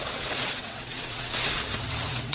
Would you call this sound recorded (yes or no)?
no